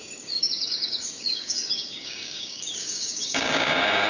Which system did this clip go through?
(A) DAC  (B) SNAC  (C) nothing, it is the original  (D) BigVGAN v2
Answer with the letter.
A